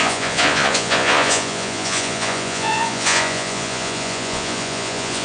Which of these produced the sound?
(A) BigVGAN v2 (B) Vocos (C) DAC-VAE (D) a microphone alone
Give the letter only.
B